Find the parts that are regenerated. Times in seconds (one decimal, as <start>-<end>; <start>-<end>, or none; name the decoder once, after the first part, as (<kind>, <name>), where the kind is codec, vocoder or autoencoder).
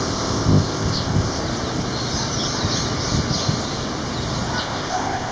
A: 0.0-1.4 (codec, ZipCodec); 4.6-5.3